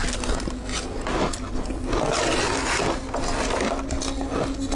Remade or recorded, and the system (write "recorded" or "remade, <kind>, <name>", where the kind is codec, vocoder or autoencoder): recorded